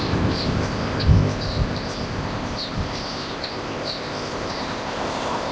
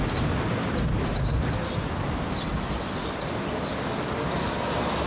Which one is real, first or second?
second